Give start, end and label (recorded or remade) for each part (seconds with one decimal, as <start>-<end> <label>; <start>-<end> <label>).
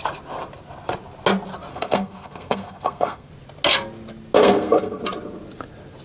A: 0.0-1.7 recorded; 1.7-3.3 remade; 3.3-4.4 recorded; 4.4-5.0 remade; 5.0-6.0 recorded